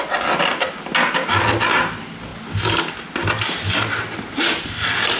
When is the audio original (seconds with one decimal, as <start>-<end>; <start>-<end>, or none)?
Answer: 0.0-5.2